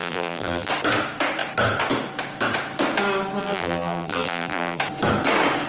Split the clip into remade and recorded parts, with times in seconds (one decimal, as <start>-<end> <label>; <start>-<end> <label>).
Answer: 0.0-0.7 remade; 0.7-3.4 recorded; 3.4-4.8 remade; 4.8-5.7 recorded